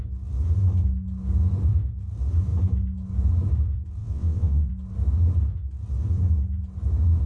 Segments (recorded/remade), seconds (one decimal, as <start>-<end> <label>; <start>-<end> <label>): 0.0-4.0 recorded; 4.0-4.7 remade; 4.7-7.3 recorded